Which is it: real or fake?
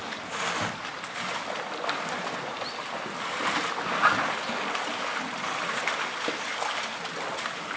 real